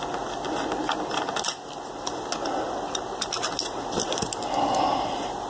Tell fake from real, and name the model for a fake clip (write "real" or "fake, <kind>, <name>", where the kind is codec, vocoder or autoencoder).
real